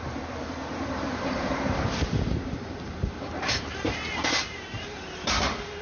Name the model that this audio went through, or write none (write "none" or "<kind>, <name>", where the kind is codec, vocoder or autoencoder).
vocoder, BigVGAN v2